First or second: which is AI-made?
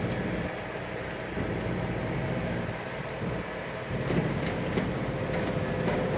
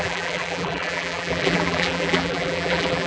second